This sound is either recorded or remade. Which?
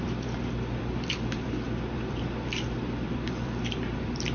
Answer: remade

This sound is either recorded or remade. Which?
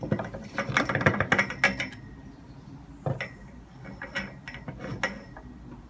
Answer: recorded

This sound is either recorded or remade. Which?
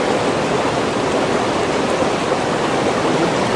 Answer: recorded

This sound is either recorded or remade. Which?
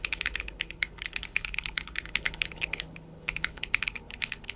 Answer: remade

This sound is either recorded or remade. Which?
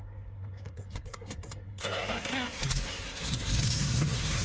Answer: remade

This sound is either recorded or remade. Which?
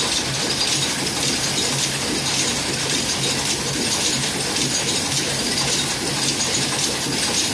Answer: recorded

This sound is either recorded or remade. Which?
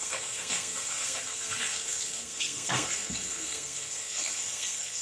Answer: remade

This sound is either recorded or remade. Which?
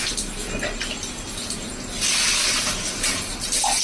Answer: recorded